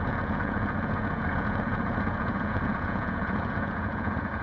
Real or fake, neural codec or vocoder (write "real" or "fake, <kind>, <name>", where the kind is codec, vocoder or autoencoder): fake, vocoder, Vocos